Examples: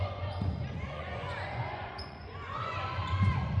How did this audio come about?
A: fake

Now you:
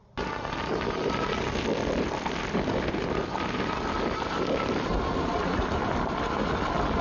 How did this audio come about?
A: real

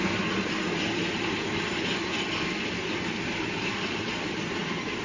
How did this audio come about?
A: real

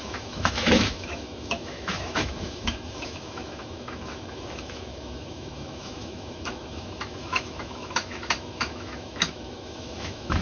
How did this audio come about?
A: fake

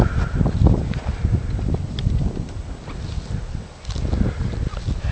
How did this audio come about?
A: real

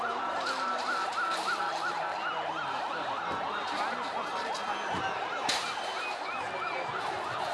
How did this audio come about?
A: real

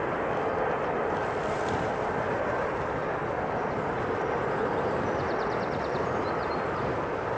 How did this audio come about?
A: real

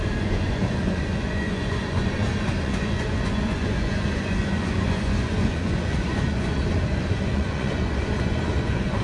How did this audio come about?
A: fake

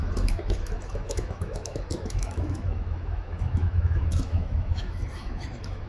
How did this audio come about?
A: fake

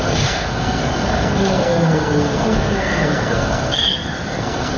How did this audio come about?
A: fake